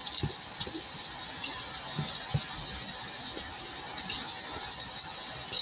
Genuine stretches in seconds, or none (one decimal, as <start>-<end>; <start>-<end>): 0.0-5.6